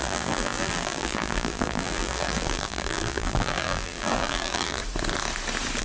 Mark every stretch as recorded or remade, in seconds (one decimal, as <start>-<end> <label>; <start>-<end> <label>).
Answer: 0.0-4.8 remade; 4.8-5.8 recorded